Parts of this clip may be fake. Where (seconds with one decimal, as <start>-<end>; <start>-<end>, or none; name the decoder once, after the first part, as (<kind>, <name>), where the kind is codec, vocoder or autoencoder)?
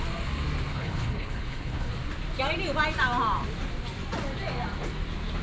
0.7-1.9 (codec, HILCodec)